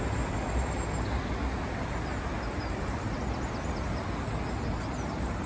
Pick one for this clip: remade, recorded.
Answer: recorded